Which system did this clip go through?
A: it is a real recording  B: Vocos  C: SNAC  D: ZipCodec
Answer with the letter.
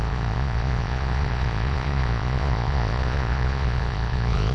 B